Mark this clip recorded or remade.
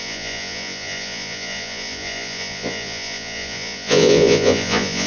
remade